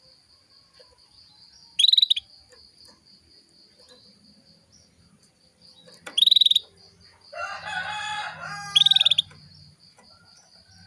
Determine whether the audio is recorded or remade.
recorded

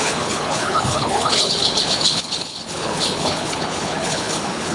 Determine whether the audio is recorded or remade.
remade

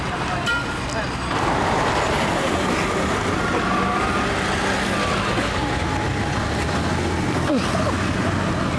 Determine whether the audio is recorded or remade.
recorded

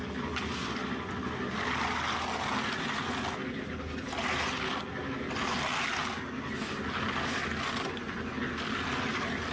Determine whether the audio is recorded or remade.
recorded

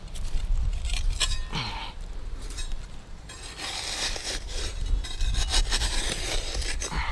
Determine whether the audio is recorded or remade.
remade